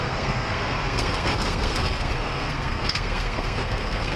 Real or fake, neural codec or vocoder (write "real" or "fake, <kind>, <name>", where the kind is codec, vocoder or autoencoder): fake, codec, SNAC